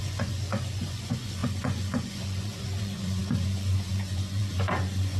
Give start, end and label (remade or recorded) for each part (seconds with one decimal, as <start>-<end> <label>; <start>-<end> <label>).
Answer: 0.0-5.2 remade